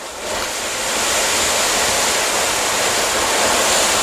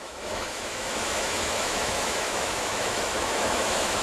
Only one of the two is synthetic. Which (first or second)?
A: second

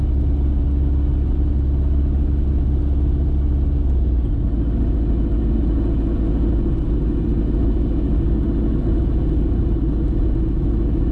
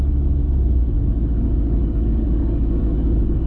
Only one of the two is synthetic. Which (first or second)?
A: second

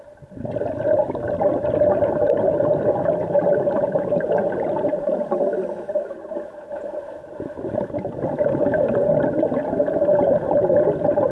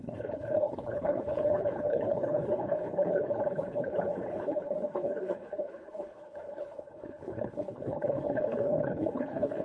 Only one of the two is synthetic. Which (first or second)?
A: second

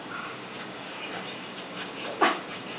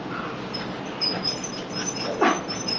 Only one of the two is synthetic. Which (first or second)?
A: first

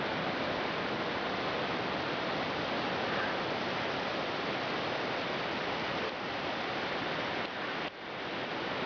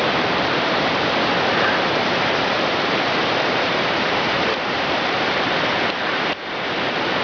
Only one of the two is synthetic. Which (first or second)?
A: second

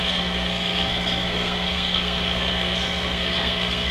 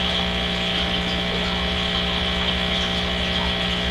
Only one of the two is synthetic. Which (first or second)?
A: first